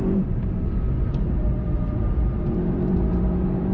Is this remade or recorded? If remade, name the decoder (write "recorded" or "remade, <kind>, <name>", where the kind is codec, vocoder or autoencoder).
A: remade, vocoder, BigVGAN v2